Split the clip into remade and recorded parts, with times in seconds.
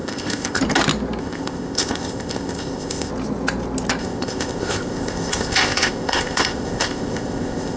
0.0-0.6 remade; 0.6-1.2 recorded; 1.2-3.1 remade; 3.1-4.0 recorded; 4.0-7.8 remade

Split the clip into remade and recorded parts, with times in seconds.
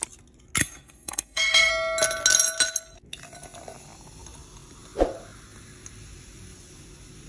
0.0-0.6 recorded; 0.6-1.7 remade; 1.7-7.3 recorded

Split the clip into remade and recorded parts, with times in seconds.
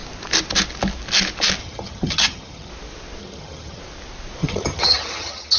0.0-1.6 recorded; 1.6-2.7 remade; 2.7-3.2 recorded; 3.2-3.8 remade; 3.8-4.4 recorded; 4.4-5.6 remade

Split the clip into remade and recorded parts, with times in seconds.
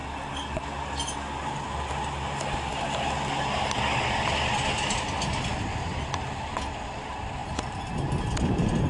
0.0-8.9 recorded